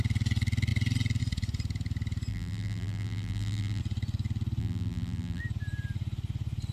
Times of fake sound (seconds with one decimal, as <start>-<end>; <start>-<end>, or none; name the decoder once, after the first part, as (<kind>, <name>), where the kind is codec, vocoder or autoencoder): 2.3-3.8 (vocoder, BigVGAN v2); 4.6-5.4

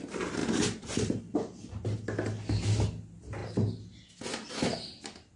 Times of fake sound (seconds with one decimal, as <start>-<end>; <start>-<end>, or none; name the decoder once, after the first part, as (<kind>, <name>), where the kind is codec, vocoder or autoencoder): 0.4-1.2 (vocoder, BigVGAN v2)

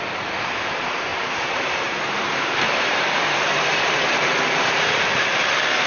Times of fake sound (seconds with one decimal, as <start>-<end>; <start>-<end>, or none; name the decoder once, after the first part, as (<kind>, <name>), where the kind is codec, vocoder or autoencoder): 0.0-5.1 (vocoder, BigVGAN v2)